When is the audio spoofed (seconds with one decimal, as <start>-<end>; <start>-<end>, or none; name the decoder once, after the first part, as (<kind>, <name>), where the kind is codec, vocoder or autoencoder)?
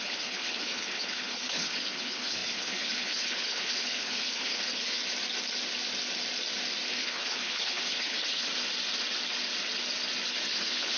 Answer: 0.0-5.0 (codec, HILCodec); 6.9-8.5; 10.5-11.0